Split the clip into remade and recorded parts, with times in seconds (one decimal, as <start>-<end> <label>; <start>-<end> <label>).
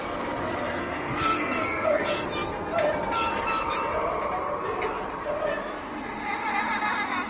0.0-0.8 recorded; 0.8-2.0 remade; 2.0-7.3 recorded